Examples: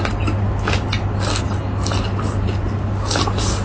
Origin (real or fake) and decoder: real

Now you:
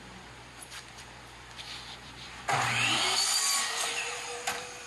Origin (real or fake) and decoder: fake, vocoder, BigVGAN v2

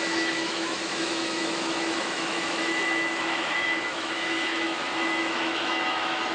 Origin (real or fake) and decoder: fake, autoencoder, DAC-VAE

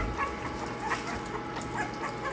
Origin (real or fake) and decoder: real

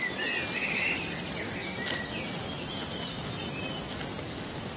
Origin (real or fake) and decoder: real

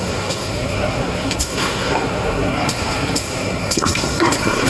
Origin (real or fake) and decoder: fake, codec, SNAC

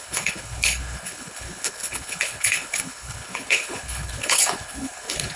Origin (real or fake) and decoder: fake, codec, HILCodec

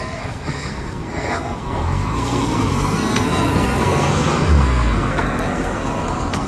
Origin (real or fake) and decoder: fake, codec, SNAC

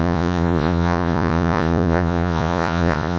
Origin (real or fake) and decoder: fake, vocoder, Vocos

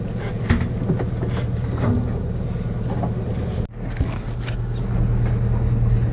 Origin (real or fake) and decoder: real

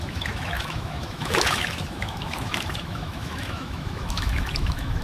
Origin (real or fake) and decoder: fake, autoencoder, DAC-VAE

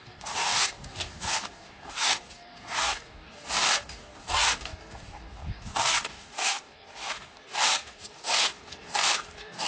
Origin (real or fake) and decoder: fake, codec, DAC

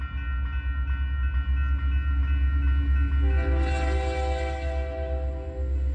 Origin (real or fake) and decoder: real